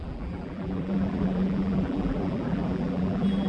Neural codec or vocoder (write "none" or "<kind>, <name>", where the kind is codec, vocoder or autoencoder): vocoder, BigVGAN v2